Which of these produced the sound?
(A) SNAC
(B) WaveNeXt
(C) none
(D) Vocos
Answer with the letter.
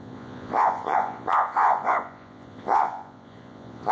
D